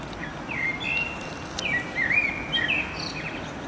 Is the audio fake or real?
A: real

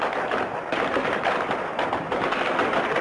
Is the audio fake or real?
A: real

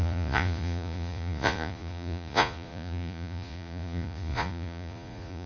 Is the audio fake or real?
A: fake